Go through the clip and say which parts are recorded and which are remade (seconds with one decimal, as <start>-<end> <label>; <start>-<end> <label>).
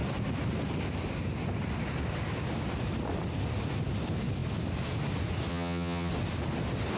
0.0-5.5 recorded; 5.5-6.1 remade; 6.1-7.0 recorded